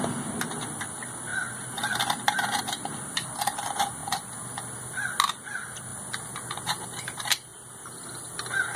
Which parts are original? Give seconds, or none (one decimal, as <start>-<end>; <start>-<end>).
0.0-8.8